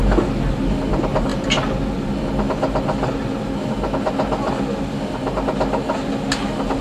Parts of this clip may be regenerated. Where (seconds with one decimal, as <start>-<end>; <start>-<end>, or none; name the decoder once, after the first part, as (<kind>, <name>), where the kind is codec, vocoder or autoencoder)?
none